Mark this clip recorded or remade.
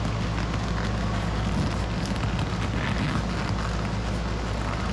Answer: recorded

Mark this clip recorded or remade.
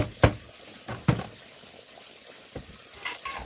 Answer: recorded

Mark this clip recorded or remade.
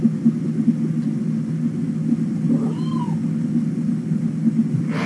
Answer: recorded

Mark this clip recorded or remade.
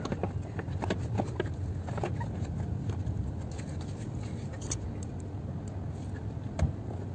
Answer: recorded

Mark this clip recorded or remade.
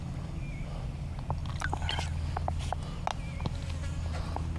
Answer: recorded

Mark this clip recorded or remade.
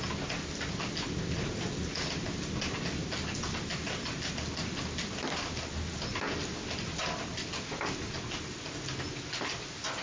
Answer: recorded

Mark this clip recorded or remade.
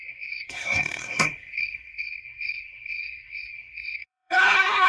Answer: remade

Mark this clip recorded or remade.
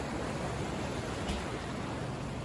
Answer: recorded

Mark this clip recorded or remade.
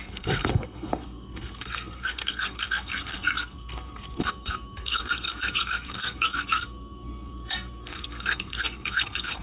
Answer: remade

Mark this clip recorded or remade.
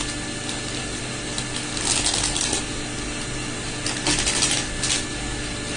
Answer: recorded